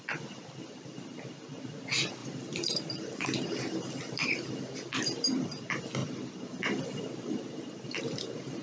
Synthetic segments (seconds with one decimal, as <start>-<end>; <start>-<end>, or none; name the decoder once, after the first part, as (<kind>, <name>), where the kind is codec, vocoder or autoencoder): 2.2-2.8 (vocoder, BigVGAN v2)